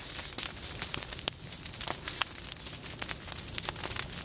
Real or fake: real